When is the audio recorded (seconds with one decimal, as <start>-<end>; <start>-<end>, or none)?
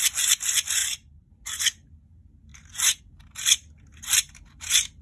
0.0-2.5; 3.0-3.9